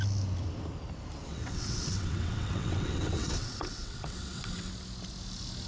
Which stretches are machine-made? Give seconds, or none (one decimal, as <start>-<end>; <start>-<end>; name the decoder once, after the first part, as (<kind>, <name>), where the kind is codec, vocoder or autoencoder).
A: 1.3-4.7 (vocoder, WaveNeXt)